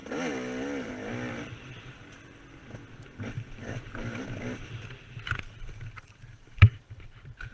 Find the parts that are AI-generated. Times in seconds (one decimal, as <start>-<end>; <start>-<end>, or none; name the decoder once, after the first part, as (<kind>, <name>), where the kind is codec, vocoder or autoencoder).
none